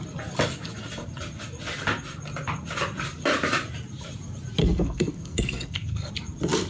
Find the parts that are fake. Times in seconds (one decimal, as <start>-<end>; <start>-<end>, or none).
4.6-6.1